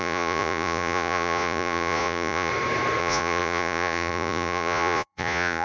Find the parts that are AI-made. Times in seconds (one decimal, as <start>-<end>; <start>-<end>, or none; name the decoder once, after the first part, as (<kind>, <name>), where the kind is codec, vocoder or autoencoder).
0.0-2.5 (vocoder, Vocos); 3.0-5.6

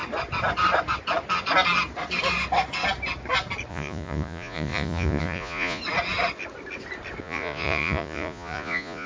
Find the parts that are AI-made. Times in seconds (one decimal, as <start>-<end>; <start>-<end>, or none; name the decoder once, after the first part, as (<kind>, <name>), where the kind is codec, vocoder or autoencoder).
3.7-5.8 (vocoder, Vocos); 7.2-9.1